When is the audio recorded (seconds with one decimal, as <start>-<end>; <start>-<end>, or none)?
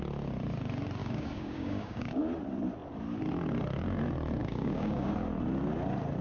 0.0-1.0; 2.2-4.4; 5.1-6.2